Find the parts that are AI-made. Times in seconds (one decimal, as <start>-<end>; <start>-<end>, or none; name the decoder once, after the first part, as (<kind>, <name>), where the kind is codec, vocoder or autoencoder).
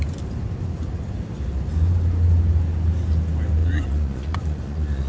3.6-5.1 (vocoder, Vocos)